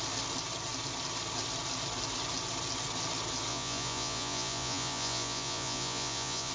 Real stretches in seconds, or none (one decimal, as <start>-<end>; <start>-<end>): 0.0-3.5